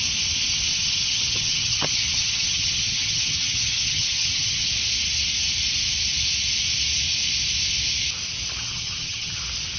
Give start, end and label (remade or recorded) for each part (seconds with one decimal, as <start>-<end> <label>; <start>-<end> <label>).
0.0-0.7 recorded; 0.7-4.7 remade; 4.7-8.6 recorded; 8.6-9.4 remade; 9.4-9.8 recorded